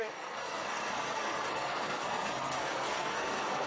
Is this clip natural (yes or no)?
no